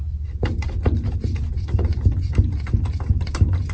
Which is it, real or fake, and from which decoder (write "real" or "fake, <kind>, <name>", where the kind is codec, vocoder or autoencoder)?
real